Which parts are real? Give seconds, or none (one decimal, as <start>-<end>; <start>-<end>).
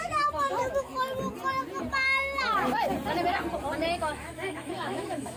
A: 0.9-4.0